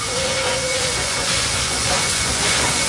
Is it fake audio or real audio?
fake